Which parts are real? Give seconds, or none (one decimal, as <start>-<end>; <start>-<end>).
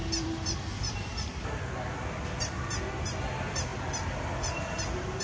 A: 2.5-3.7